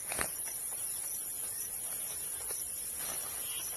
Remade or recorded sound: remade